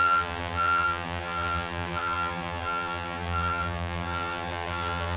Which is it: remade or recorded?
remade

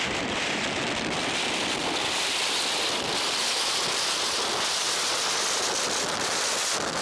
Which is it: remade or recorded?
remade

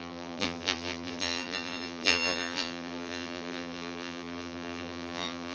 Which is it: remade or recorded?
remade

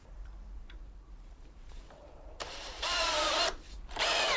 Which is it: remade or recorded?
remade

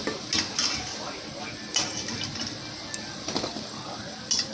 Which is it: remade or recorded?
recorded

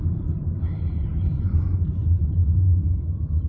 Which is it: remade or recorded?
remade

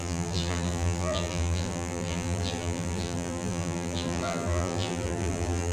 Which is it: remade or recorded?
remade